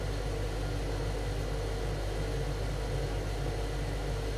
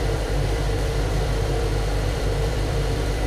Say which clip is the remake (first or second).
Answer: second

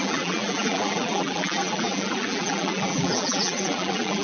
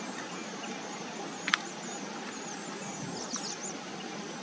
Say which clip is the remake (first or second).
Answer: first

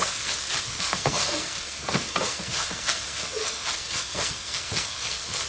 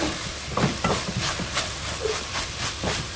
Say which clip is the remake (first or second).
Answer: first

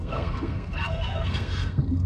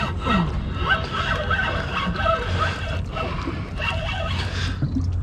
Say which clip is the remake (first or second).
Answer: first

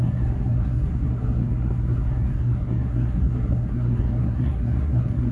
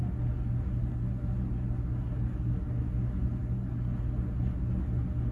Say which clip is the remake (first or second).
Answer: first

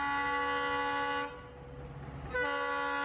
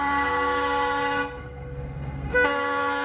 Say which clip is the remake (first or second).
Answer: second